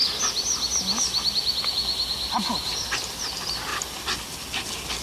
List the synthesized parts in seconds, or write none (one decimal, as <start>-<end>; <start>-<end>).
none